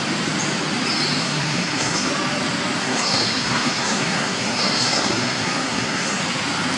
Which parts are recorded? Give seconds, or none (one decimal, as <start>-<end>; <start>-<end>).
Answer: 0.0-1.2; 2.1-2.8; 6.2-6.8